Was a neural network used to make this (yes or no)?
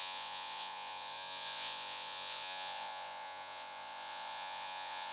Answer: yes